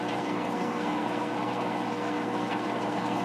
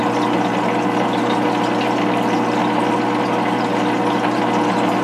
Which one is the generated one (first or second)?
first